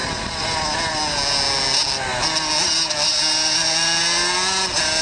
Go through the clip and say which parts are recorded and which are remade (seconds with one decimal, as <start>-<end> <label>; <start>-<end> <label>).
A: 0.0-0.8 remade; 0.8-3.1 recorded; 3.1-4.0 remade; 4.0-5.0 recorded